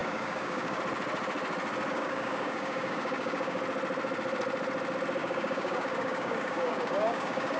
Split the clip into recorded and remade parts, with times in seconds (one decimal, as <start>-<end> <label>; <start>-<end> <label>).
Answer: 0.0-0.8 remade; 0.8-1.9 recorded; 1.9-3.6 remade; 3.6-5.2 recorded; 5.2-7.6 remade

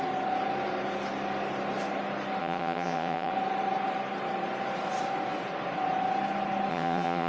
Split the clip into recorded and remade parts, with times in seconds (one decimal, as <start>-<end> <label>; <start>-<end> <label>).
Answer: 0.0-2.4 recorded; 2.4-3.3 remade; 3.3-6.7 recorded; 6.7-7.3 remade

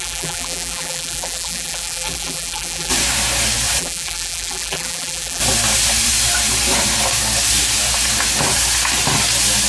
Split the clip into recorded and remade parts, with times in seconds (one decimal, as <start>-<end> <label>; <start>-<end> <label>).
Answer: 0.0-2.9 remade; 2.9-3.8 recorded; 3.8-5.4 remade; 5.4-9.7 recorded

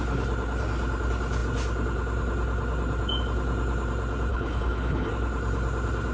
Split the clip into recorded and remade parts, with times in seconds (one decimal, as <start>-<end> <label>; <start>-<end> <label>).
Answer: 0.0-4.3 recorded; 4.3-5.1 remade; 5.1-6.1 recorded

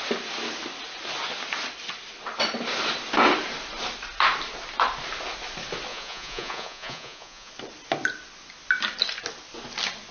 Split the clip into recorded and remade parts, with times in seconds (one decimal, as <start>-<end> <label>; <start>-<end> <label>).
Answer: 0.0-5.9 recorded; 5.9-7.5 remade; 7.5-10.1 recorded

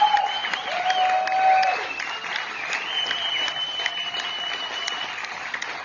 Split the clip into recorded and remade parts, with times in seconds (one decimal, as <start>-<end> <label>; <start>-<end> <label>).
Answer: 0.0-5.8 recorded